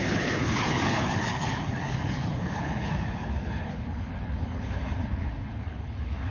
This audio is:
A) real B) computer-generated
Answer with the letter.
B